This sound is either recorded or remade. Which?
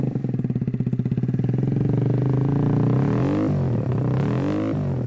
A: recorded